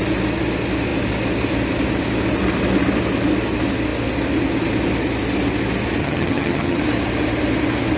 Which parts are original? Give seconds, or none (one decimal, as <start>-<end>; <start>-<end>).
0.0-6.0; 6.8-8.0